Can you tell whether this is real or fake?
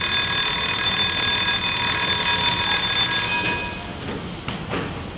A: real